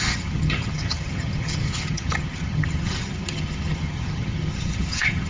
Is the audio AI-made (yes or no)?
yes